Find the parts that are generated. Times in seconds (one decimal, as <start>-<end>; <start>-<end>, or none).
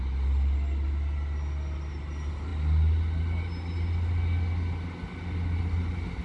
none